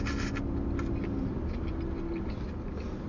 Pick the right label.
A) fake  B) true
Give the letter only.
B